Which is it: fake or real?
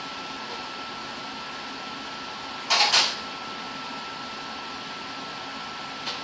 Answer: real